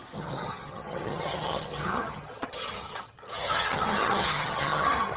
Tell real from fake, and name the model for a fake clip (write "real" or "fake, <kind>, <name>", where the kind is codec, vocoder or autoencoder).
fake, vocoder, HiFi-GAN